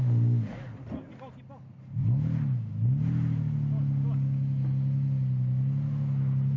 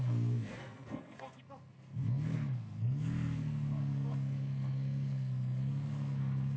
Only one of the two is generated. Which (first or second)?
second